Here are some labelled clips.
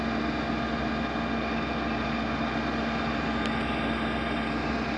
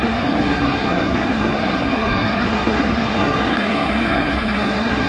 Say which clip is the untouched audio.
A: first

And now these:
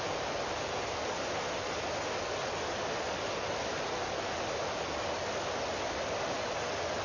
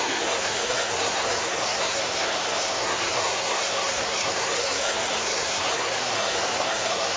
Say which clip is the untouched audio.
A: first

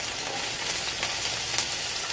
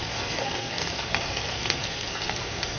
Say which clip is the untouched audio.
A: first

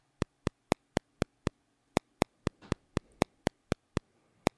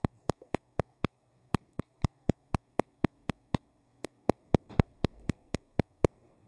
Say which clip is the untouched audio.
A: first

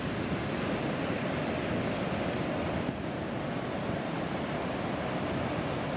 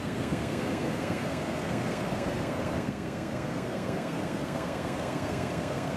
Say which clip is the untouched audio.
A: first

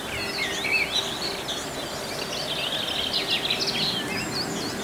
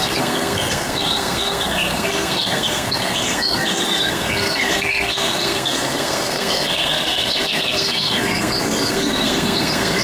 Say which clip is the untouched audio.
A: first